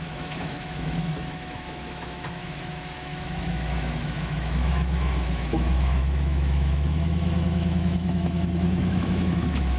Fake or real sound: fake